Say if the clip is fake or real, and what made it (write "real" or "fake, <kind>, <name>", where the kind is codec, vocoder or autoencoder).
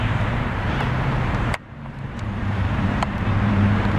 fake, vocoder, BigVGAN v2